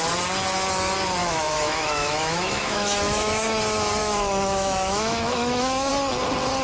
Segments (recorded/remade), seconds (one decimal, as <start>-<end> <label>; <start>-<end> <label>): 0.0-1.2 recorded; 1.2-3.6 remade; 3.6-4.0 recorded; 4.0-5.9 remade; 5.9-6.6 recorded